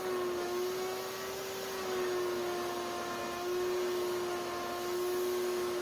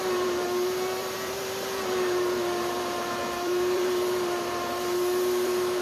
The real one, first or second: first